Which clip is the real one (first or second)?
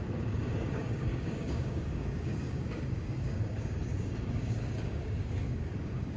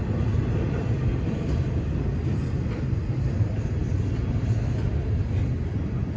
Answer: second